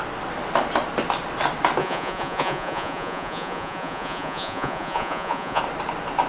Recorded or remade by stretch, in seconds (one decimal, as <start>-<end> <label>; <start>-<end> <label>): 0.0-1.8 recorded; 1.8-5.6 remade; 5.6-6.3 recorded

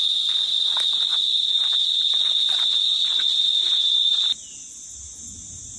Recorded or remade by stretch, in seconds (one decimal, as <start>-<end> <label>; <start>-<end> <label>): 0.0-5.8 recorded

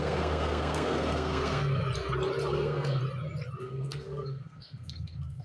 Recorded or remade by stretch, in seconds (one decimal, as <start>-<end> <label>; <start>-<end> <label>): 0.0-1.8 remade; 1.8-2.5 recorded; 2.5-3.0 remade; 3.0-3.6 recorded; 3.6-5.4 remade

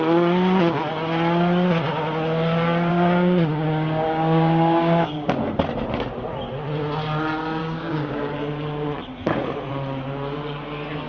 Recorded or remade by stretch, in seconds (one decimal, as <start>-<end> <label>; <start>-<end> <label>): 0.0-2.9 recorded; 2.9-5.4 remade; 5.4-7.6 recorded; 7.6-8.3 remade; 8.3-11.1 recorded

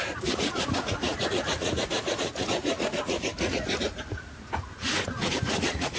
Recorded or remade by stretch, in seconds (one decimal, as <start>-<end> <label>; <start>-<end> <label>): 0.0-6.0 remade

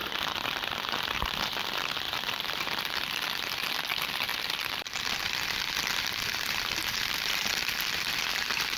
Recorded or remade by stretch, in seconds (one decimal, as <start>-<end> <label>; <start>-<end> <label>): 0.0-8.8 remade

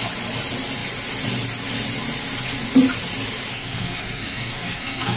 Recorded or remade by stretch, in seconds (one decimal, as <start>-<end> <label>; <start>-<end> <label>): 0.0-3.5 recorded; 3.5-5.2 remade

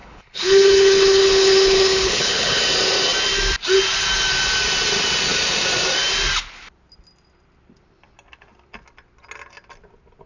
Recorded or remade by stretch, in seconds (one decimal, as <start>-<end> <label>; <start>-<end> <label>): 0.0-2.6 remade; 2.6-10.3 recorded